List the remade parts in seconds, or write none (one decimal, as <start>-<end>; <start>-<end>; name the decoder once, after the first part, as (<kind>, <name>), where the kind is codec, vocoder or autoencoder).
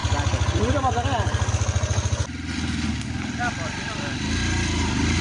none